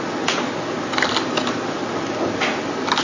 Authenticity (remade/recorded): recorded